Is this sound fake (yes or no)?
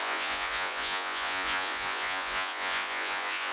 yes